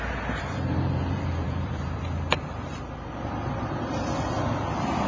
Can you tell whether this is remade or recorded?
remade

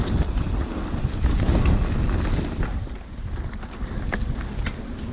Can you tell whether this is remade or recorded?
recorded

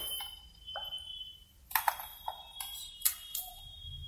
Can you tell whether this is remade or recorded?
recorded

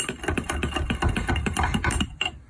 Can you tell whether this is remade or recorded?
remade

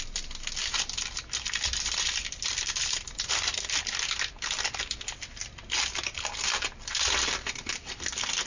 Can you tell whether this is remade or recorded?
remade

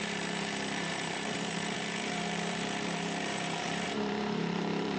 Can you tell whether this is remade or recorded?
remade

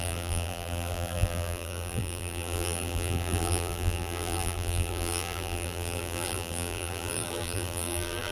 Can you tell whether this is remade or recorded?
remade